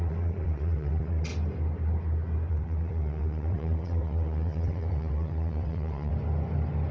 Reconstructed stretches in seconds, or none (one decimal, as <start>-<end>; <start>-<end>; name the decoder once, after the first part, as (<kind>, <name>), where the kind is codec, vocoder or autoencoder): 0.0-1.3 (vocoder, WaveNeXt); 2.5-6.1

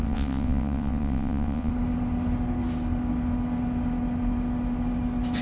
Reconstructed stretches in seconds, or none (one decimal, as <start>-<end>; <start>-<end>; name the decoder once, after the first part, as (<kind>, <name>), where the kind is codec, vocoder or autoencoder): 0.0-1.7 (vocoder, WaveNeXt)

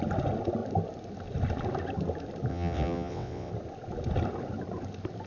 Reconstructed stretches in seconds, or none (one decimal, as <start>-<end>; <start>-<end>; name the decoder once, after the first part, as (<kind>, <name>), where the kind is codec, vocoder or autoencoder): 2.5-3.5 (vocoder, WaveNeXt)

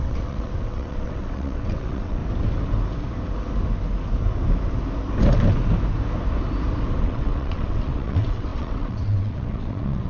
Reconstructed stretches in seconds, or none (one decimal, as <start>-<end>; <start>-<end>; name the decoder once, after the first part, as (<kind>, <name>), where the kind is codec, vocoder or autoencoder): 0.0-2.2 (vocoder, WaveNeXt); 7.0-10.1

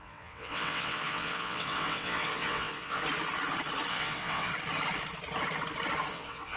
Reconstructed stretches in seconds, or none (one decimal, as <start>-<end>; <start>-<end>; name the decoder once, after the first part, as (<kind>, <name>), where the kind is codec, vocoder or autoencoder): 0.0-3.0 (vocoder, WaveNeXt); 3.9-4.5; 6.1-6.6

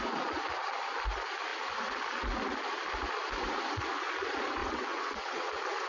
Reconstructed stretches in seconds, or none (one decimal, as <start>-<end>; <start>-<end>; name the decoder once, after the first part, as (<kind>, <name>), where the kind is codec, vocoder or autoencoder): 4.6-5.5 (vocoder, WaveNeXt)